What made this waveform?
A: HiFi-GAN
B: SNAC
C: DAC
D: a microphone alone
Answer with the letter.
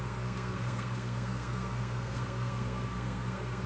B